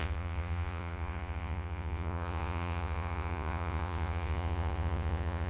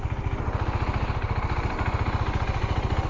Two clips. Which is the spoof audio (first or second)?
first